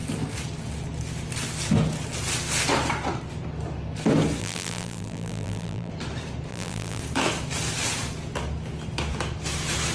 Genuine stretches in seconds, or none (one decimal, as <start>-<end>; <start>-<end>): 0.0-4.4; 5.9-6.5; 7.0-9.9